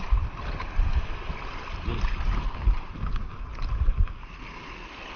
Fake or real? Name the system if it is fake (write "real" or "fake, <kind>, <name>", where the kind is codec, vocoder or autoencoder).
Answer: real